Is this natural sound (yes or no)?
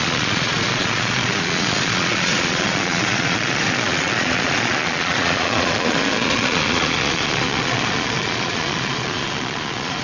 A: no